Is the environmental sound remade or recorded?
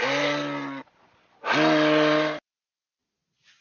recorded